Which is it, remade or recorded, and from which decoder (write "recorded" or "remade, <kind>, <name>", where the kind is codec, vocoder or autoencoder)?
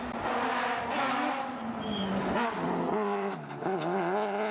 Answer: recorded